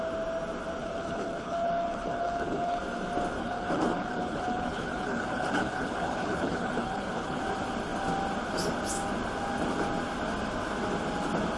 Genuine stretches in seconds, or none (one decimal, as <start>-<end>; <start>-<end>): 0.0-0.8; 2.8-3.4; 7.4-11.6